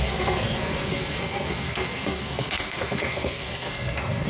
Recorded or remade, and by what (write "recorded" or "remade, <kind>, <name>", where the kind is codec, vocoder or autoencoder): remade, codec, SNAC